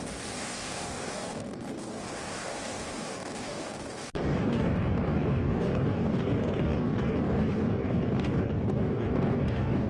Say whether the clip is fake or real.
fake